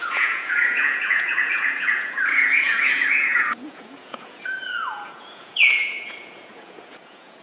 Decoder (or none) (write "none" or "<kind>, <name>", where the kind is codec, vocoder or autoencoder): vocoder, Vocos